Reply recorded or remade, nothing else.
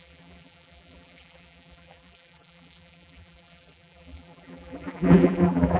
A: remade